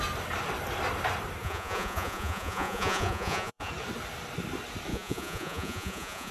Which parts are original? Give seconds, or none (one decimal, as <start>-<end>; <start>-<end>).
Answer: 0.0-1.4; 3.7-4.9

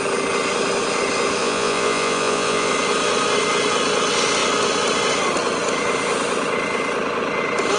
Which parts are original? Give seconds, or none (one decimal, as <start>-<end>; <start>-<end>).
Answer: 0.0-1.4; 2.7-7.8